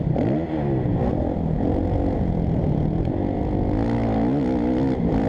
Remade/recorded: recorded